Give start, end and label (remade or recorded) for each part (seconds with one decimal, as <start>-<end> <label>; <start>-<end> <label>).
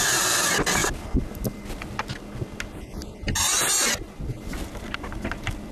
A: 0.0-5.7 recorded